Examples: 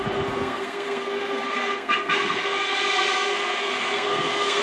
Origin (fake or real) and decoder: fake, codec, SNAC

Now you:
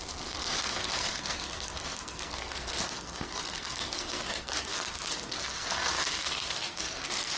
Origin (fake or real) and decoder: fake, codec, SNAC